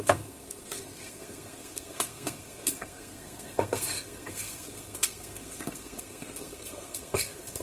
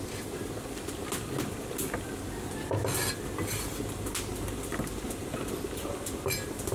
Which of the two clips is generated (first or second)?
first